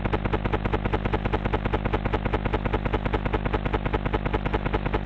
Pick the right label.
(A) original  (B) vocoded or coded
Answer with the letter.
A